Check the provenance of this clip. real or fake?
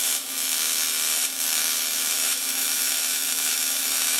fake